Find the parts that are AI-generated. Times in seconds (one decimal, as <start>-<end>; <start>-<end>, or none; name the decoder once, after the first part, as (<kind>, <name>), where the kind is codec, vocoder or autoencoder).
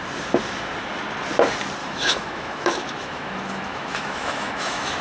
1.8-5.0 (autoencoder, DAC-VAE)